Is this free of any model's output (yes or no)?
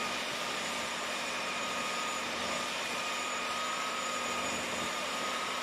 no